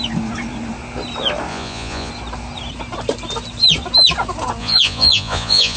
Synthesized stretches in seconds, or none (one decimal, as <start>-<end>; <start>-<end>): 1.5-2.1; 4.6-5.8